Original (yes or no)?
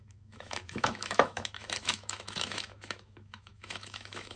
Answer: no